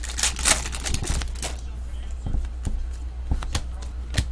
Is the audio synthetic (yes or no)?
no